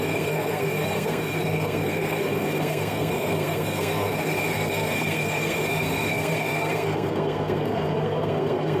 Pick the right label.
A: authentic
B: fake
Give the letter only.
B